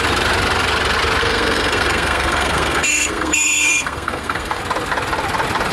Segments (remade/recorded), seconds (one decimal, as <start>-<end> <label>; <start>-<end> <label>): 0.0-1.2 recorded; 1.2-4.6 remade; 4.6-5.7 recorded